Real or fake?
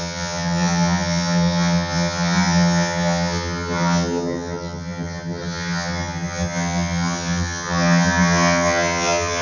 fake